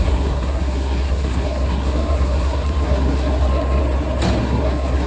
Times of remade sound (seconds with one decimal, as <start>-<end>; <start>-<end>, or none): 0.0-3.8; 4.4-5.1